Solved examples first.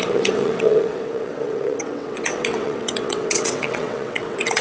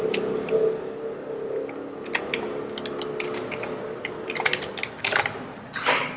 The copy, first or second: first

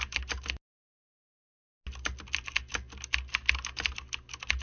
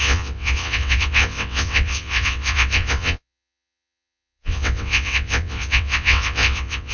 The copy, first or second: second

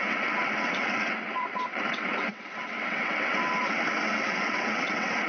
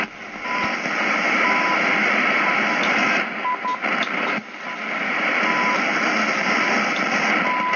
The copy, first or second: first